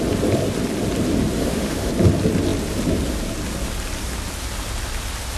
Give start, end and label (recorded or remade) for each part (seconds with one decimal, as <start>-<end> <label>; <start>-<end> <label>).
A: 0.0-1.4 recorded; 1.4-1.9 remade; 1.9-5.4 recorded